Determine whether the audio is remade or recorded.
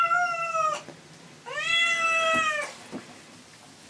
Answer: recorded